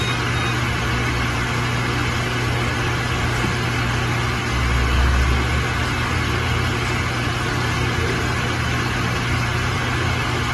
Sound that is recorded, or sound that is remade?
recorded